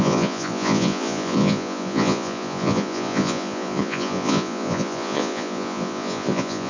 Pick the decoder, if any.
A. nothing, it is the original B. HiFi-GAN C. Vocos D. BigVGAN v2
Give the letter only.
C